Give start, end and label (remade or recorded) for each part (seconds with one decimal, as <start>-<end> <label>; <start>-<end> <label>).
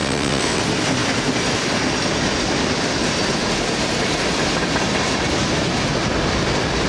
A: 0.0-0.6 remade; 0.6-6.9 recorded